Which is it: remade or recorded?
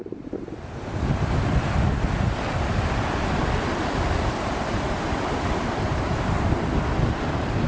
recorded